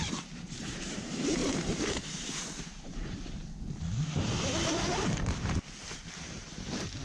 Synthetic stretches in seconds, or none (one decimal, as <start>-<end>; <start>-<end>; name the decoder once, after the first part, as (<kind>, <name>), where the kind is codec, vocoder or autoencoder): 0.0-1.4 (vocoder, BigVGAN v2); 2.6-3.4; 4.2-7.0